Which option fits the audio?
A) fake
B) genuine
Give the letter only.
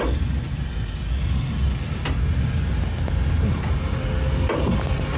B